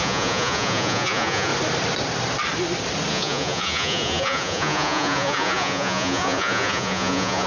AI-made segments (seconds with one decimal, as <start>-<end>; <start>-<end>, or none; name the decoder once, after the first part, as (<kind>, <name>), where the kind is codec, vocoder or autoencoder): 0.0-1.5 (vocoder, Vocos); 3.1-7.5